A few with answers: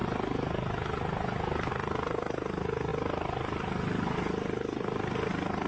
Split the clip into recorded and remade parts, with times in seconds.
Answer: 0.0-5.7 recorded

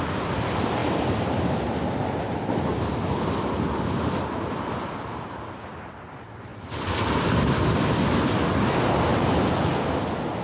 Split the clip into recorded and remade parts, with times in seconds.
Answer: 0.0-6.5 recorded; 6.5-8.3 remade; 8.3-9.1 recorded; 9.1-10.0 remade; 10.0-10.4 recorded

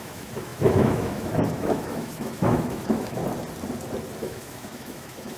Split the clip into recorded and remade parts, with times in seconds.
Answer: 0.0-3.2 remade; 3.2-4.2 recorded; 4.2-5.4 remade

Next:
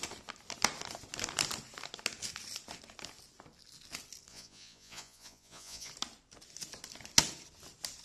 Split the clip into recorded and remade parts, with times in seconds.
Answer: 0.0-4.3 recorded; 4.3-5.9 remade; 5.9-8.0 recorded